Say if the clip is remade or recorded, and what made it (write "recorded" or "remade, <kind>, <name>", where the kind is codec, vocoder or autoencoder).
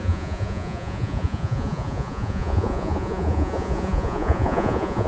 remade, vocoder, Vocos